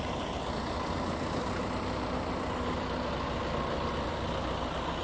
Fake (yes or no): no